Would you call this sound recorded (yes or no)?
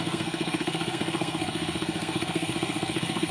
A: no